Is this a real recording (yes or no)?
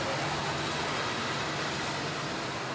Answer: yes